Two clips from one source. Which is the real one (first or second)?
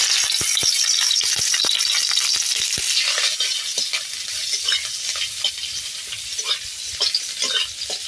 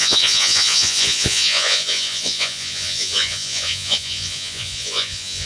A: first